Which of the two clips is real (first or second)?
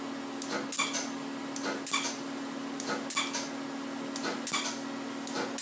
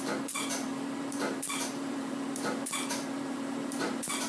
first